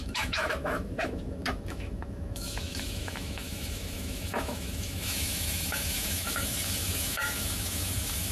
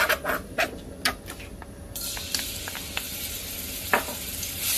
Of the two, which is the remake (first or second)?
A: first